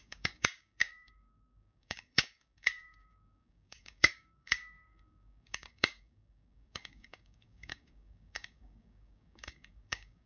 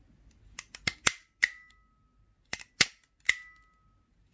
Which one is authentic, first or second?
second